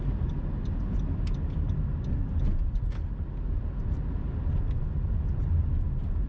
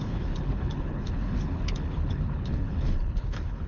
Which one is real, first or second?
first